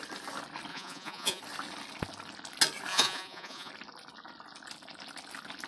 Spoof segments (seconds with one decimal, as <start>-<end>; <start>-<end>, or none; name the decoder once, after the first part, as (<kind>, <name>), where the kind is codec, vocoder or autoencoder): 0.7-1.4 (vocoder, Vocos); 2.9-3.7